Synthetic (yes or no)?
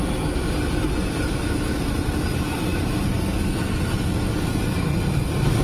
no